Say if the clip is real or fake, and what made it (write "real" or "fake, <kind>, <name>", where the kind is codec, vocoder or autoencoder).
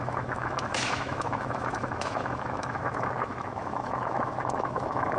fake, autoencoder, DAC-VAE